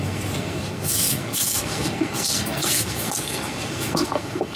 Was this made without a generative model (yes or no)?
no